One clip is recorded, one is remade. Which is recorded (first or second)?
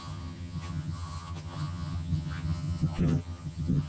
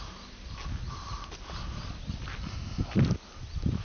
second